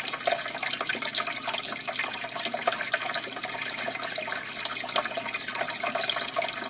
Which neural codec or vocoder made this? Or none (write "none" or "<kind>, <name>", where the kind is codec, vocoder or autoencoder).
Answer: none